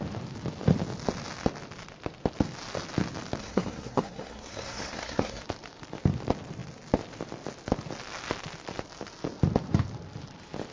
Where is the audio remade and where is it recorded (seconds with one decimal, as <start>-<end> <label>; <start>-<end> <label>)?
0.0-3.4 recorded; 3.4-5.4 remade; 5.4-10.7 recorded